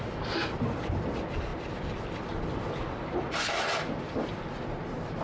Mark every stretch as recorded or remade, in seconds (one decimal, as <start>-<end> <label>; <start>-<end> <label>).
0.0-5.2 recorded